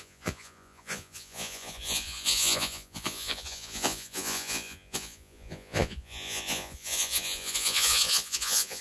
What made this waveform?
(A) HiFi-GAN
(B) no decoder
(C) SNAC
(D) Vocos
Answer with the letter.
D